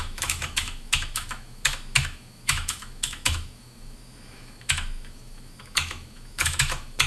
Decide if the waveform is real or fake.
fake